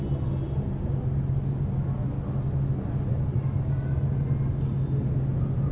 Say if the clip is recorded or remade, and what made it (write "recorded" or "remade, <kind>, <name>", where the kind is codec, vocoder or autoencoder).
recorded